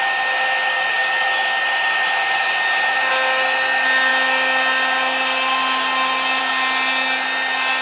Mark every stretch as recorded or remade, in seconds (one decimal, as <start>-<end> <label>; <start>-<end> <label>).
0.0-7.8 recorded